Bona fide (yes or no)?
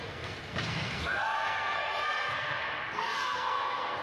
no